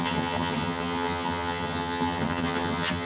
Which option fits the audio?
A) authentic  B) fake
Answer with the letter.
B